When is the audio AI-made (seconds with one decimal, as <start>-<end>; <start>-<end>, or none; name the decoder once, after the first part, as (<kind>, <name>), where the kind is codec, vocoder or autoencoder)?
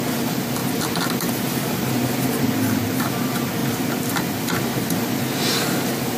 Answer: 0.6-2.8 (vocoder, BigVGAN v2); 3.6-4.6